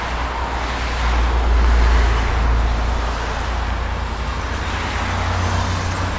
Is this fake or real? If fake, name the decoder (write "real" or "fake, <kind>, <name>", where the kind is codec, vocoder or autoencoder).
real